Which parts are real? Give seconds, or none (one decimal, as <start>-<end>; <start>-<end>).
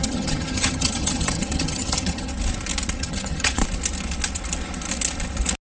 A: 2.3-3.0; 3.6-5.6